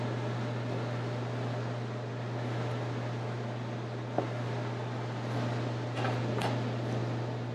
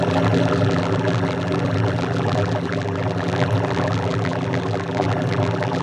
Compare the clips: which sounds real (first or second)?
first